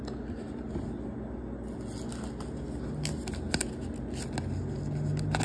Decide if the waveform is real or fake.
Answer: real